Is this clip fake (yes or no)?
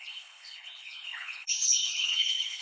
yes